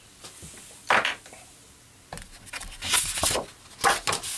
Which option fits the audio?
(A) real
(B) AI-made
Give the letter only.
A